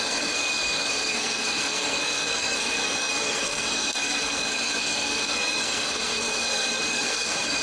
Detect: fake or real fake